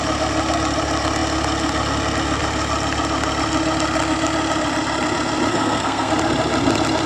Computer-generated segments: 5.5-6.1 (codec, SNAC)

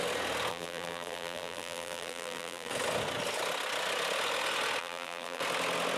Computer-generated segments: 0.5-2.7 (vocoder, BigVGAN v2); 4.8-5.4

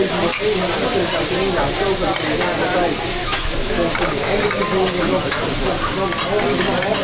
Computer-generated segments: 3.2-3.9 (autoencoder, DAC-VAE)

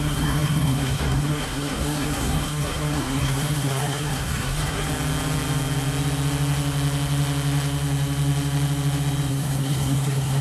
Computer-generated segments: 0.0-4.9 (codec, SNAC); 9.3-10.4

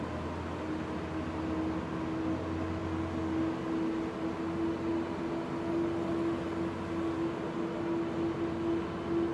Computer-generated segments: none